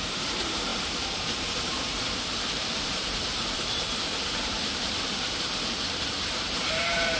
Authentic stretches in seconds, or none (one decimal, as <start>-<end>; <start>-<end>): none